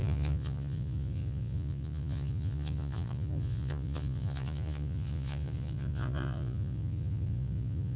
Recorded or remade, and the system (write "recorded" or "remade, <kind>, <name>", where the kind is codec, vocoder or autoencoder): remade, vocoder, Vocos